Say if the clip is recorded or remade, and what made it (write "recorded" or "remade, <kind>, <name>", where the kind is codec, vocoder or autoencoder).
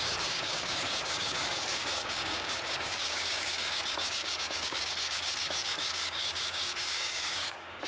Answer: remade, codec, DAC